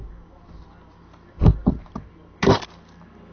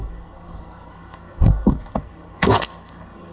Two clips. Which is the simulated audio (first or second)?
second